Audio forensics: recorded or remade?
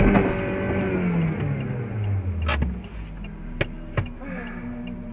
recorded